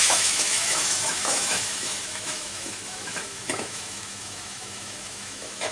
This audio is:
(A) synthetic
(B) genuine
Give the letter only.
A